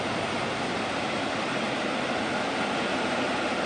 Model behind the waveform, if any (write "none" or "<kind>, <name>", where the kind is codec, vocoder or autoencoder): none